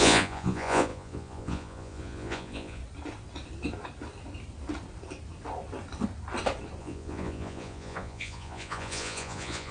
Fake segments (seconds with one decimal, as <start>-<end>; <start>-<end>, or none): 0.0-2.8; 6.8-9.7